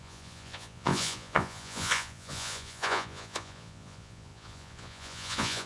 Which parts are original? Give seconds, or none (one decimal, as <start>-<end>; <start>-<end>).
none